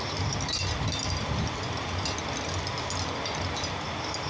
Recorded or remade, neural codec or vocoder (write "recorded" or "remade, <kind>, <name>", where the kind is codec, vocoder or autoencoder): recorded